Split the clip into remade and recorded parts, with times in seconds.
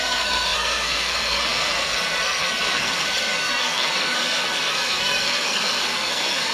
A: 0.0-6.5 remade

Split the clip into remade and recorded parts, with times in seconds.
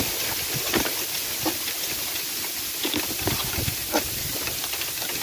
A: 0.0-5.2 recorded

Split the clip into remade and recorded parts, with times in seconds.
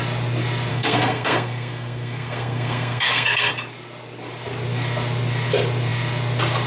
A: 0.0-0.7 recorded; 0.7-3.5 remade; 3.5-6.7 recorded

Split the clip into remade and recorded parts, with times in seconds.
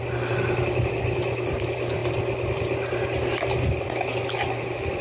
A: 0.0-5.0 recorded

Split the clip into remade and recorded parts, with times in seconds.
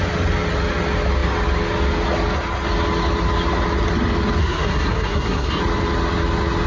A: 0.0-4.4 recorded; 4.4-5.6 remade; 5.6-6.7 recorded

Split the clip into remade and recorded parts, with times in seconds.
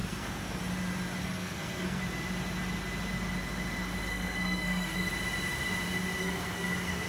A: 0.0-0.6 remade; 0.6-1.2 recorded; 1.2-2.0 remade; 2.0-4.1 recorded; 4.1-5.1 remade; 5.1-6.2 recorded; 6.2-7.1 remade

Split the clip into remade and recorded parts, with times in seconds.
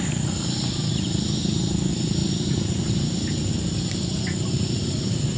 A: 0.0-5.4 recorded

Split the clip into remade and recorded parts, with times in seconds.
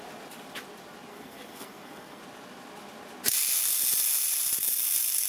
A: 0.0-1.1 recorded; 1.1-2.2 remade; 2.2-5.3 recorded